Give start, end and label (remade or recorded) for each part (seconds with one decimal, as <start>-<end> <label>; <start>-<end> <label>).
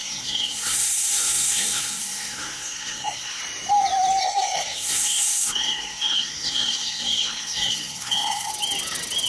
0.0-3.4 remade; 3.4-4.2 recorded; 4.2-8.5 remade; 8.5-9.3 recorded